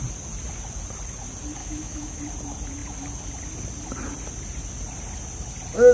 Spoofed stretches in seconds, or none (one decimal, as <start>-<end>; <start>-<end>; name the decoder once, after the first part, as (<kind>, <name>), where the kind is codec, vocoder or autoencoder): 1.6-2.2 (autoencoder, DAC-VAE)